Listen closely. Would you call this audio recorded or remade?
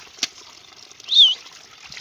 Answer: recorded